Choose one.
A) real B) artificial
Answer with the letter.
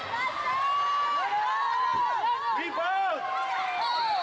A